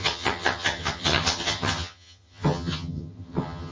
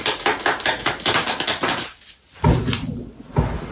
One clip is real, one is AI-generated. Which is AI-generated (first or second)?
first